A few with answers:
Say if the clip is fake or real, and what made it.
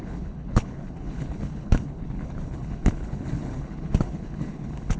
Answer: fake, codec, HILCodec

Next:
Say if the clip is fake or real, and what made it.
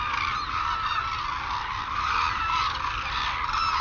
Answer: real